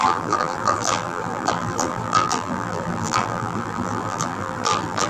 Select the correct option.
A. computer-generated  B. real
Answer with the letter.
A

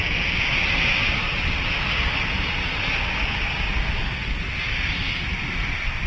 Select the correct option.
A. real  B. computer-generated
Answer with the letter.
A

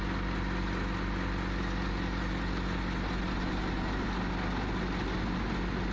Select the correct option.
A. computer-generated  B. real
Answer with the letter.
B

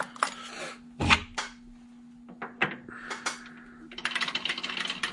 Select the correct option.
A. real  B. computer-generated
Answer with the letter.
A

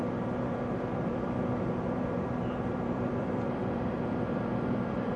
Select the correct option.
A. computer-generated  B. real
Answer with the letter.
A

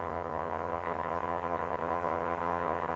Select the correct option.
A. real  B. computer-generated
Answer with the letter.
B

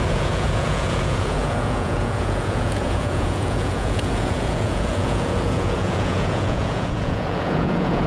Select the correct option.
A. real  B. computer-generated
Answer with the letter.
B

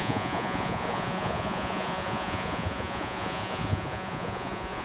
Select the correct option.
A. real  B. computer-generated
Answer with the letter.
B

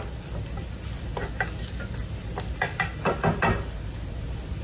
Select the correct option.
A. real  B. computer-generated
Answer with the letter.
A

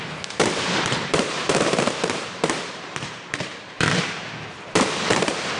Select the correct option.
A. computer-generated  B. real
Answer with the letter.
A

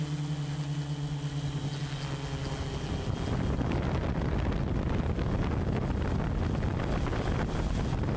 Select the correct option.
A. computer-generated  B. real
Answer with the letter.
B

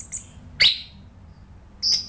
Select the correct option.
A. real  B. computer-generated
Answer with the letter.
A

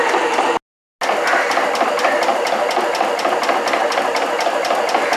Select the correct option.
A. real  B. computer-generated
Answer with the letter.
A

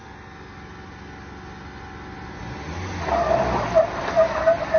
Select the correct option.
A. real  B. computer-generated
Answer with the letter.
A